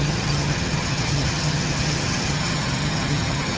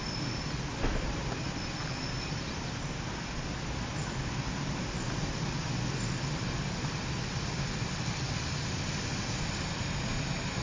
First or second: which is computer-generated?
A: first